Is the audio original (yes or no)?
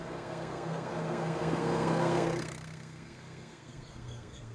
no